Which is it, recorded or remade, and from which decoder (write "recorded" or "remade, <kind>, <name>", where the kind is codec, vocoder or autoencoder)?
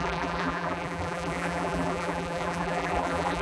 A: remade, vocoder, BigVGAN v2